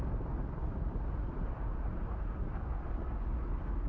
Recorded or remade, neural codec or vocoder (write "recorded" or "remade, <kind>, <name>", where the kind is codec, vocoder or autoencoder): recorded